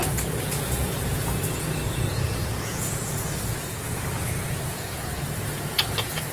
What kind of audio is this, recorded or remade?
remade